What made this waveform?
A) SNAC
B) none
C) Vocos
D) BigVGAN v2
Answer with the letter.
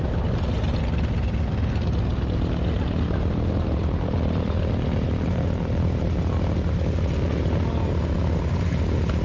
B